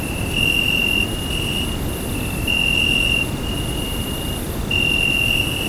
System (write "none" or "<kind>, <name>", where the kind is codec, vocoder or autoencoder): none